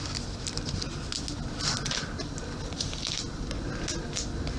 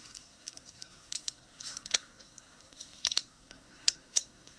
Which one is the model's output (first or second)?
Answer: second